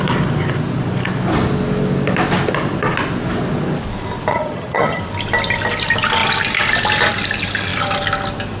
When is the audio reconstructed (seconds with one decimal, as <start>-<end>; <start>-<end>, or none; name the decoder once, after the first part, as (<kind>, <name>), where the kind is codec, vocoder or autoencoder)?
4.3-5.0 (vocoder, HiFi-GAN)